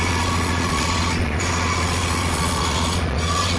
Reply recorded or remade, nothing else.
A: remade